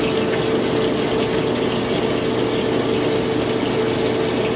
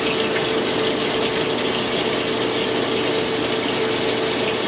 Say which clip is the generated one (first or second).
second